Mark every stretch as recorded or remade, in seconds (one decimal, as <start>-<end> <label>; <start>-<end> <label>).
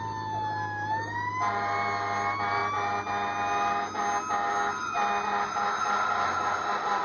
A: 0.0-7.0 recorded